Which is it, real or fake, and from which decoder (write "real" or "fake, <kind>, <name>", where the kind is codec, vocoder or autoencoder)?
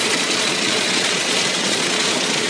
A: fake, vocoder, Vocos